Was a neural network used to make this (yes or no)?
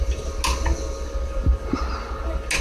no